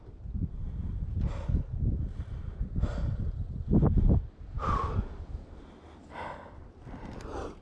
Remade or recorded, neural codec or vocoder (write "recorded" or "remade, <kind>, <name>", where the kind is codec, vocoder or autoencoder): recorded